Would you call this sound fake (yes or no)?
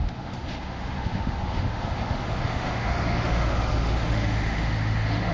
yes